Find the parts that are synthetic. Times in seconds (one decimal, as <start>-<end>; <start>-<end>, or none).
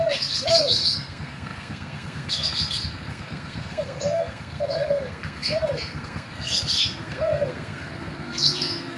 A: 0.0-9.0